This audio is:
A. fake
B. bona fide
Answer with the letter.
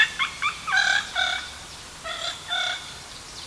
A